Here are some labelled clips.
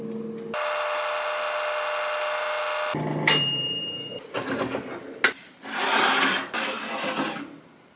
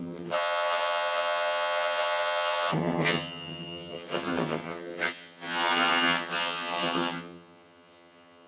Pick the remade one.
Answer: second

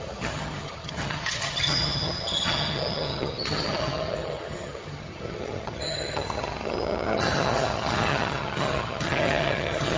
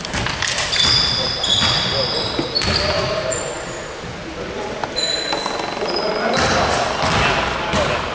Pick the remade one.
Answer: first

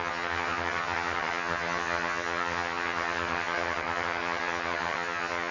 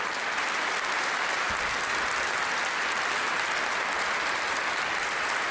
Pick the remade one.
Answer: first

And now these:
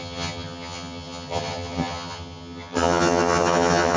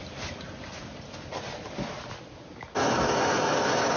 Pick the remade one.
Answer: first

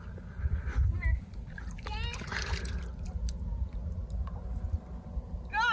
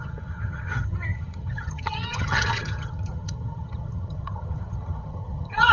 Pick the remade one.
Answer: second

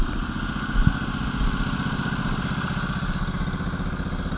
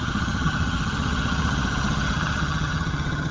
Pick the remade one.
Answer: second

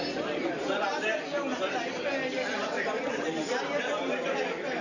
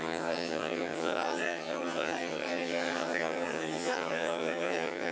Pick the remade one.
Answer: second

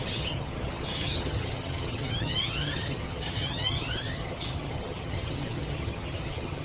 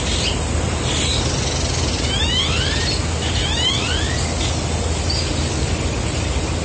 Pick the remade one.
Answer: first